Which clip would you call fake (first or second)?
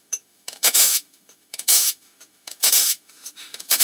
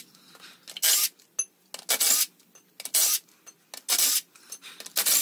first